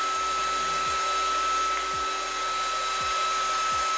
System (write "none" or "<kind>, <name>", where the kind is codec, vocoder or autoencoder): none